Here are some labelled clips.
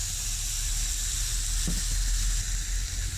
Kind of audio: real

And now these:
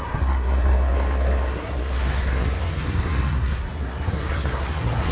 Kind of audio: fake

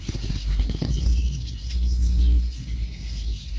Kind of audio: fake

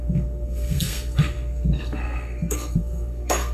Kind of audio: fake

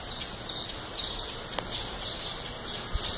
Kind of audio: real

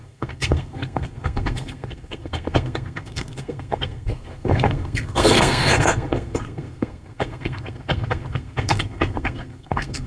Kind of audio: fake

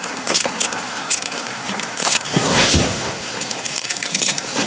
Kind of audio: fake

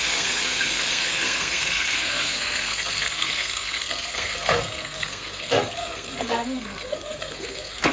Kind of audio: fake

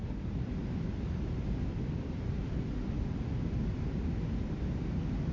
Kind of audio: real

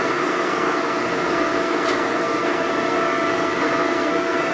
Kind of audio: fake